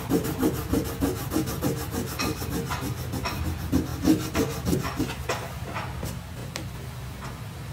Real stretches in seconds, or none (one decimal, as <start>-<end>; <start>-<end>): 0.0-3.9; 5.0-7.7